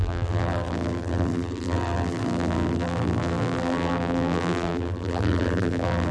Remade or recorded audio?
remade